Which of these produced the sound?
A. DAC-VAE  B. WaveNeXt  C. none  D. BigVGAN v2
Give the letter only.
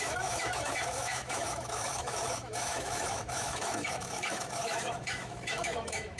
A